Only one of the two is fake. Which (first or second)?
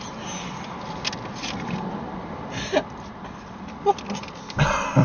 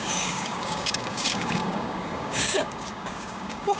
second